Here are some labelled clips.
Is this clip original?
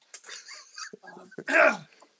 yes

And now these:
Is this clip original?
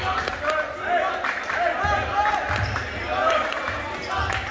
yes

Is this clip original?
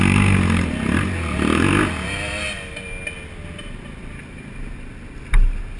yes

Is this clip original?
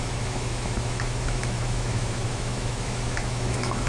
no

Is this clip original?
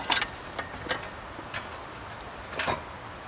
yes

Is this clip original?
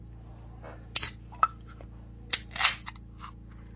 yes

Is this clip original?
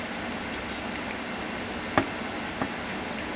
yes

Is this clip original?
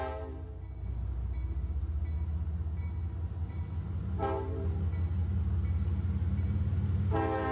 yes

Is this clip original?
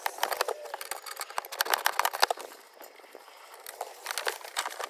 yes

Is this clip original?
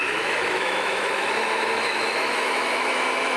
no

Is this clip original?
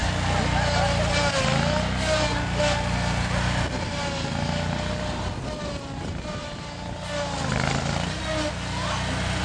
yes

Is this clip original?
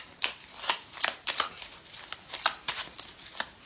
yes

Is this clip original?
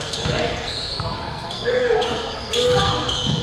no